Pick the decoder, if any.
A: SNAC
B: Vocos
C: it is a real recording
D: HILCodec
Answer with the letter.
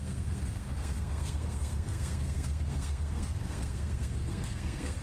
A